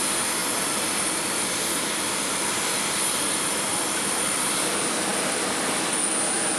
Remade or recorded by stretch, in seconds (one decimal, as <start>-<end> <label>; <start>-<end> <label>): 0.0-0.4 recorded; 0.4-2.5 remade; 2.5-5.1 recorded; 5.1-6.1 remade; 6.1-6.6 recorded

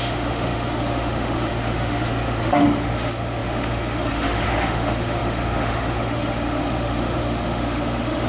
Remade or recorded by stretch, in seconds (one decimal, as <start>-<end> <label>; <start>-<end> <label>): 0.0-8.3 remade

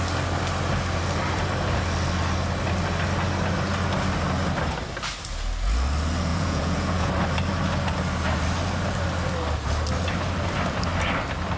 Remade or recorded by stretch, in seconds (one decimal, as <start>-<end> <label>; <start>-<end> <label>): 0.0-6.3 recorded; 6.3-7.1 remade; 7.1-11.6 recorded

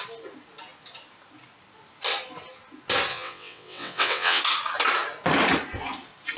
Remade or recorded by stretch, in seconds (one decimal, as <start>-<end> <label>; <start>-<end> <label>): 0.0-3.1 recorded; 3.1-4.4 remade; 4.4-6.4 recorded

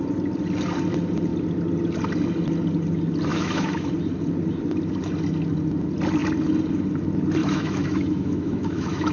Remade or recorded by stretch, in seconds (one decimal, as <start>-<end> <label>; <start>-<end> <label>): 0.0-3.3 recorded; 3.3-3.9 remade; 3.9-7.4 recorded; 7.4-9.1 remade